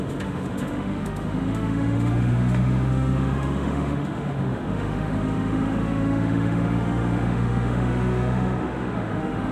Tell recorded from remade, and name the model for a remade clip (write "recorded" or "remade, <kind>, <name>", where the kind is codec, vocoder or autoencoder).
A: remade, autoencoder, DAC-VAE